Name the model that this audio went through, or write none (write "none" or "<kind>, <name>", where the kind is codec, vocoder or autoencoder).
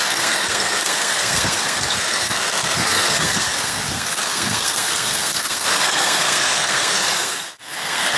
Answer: codec, SNAC